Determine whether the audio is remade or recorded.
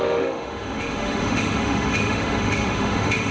remade